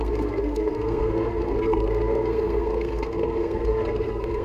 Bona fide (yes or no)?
no